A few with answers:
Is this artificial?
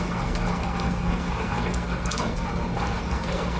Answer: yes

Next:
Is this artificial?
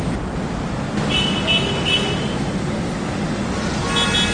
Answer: no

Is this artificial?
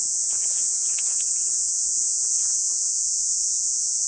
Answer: yes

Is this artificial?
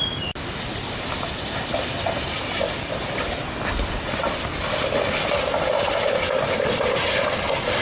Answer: no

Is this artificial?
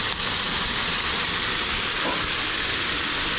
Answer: no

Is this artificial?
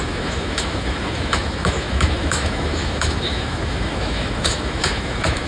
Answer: yes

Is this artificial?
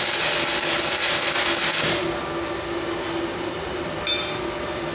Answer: no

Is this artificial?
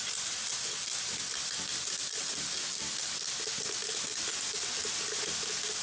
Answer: no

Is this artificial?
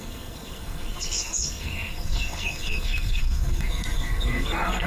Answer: yes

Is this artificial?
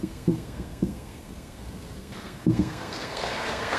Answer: yes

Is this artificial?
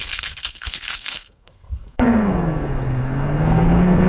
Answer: yes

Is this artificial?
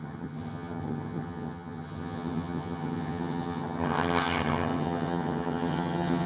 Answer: yes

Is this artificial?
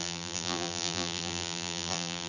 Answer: yes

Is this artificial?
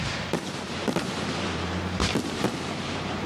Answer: yes